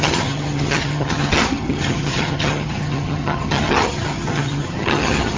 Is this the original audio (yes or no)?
no